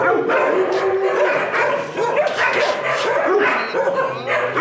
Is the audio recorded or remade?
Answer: recorded